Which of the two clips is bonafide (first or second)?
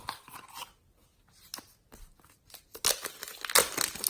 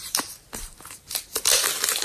first